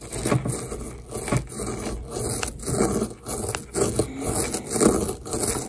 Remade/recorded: recorded